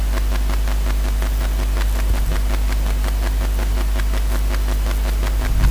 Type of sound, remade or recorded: recorded